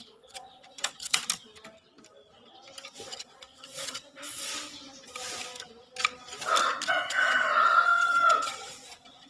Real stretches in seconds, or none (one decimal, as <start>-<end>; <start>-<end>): 1.2-3.1; 4.5-6.9